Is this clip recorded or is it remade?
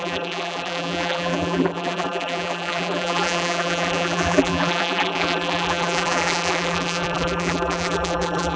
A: remade